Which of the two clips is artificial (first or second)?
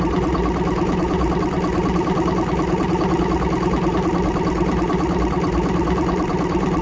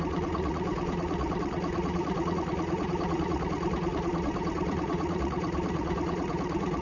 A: second